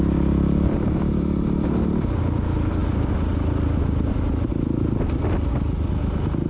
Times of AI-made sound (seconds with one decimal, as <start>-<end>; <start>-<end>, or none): none